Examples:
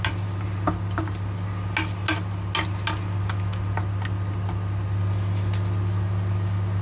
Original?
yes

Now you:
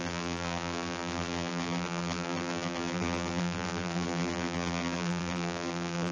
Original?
no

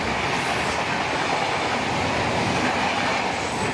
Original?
yes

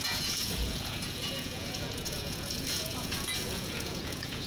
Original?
no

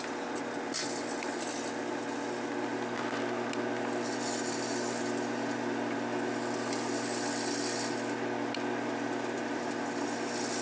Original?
yes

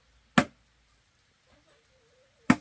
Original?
yes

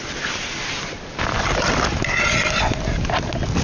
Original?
yes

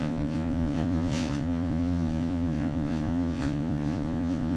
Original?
no